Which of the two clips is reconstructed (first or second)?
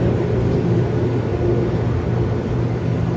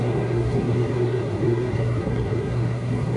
second